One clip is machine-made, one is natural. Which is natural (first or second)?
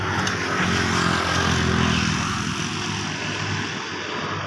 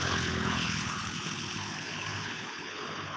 first